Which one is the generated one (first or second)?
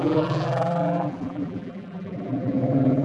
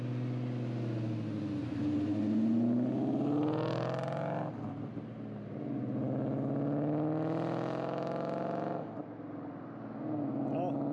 first